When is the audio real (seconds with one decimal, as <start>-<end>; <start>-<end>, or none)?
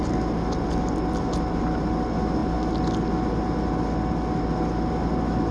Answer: 0.0-5.5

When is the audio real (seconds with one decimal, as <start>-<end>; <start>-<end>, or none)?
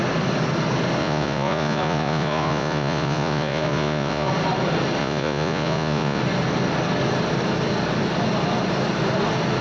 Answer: 0.0-1.0; 4.3-5.0; 6.2-9.6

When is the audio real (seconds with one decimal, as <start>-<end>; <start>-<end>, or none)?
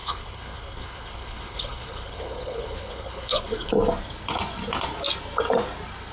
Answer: 3.7-6.1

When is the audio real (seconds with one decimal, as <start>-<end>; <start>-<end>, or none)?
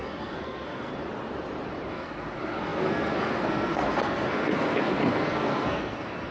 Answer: 0.9-1.9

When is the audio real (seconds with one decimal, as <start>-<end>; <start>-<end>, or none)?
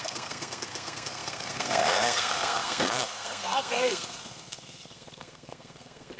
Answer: none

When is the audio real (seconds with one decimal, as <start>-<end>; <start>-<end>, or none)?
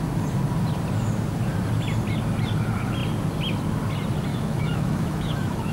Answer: 0.0-4.3